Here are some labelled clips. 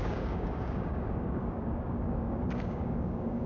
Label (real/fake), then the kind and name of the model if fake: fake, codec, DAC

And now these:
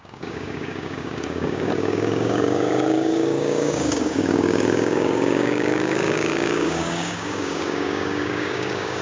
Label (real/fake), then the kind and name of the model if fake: fake, codec, DAC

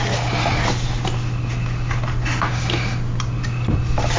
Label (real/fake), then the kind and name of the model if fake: real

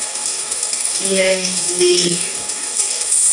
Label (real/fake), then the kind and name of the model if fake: fake, codec, DAC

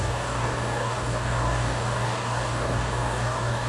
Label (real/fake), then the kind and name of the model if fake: fake, codec, DAC